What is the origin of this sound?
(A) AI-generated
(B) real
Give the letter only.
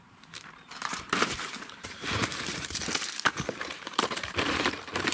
A